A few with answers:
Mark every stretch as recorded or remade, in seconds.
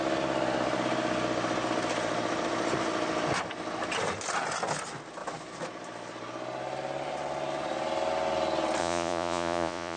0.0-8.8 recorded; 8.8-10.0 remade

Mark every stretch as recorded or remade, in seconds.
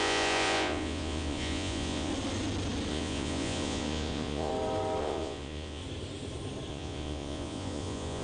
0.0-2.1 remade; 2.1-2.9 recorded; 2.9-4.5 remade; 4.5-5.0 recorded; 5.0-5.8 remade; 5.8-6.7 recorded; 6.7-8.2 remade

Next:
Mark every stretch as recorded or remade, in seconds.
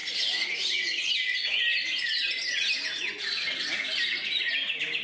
0.0-1.1 remade; 1.1-5.0 recorded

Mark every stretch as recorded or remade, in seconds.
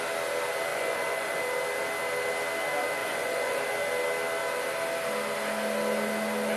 0.0-0.7 recorded; 0.7-1.4 remade; 1.4-3.0 recorded; 3.0-3.6 remade; 3.6-6.6 recorded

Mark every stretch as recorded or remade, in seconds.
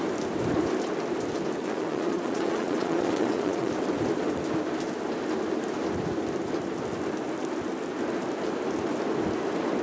0.0-1.6 recorded; 1.6-3.7 remade; 3.7-9.8 recorded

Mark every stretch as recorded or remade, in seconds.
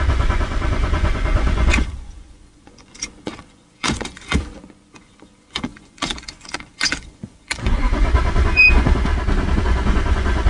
0.0-9.1 remade; 9.1-9.6 recorded; 9.6-10.5 remade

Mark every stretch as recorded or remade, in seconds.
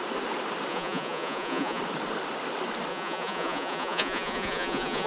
0.0-0.7 recorded; 0.7-1.8 remade; 1.8-2.9 recorded; 2.9-5.1 remade